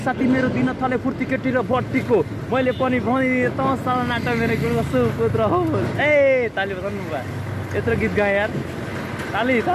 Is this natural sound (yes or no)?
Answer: yes